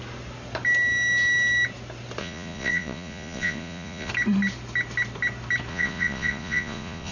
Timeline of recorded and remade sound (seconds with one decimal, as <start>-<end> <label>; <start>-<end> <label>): 0.0-2.2 recorded; 2.2-4.1 remade; 4.1-5.7 recorded; 5.7-7.1 remade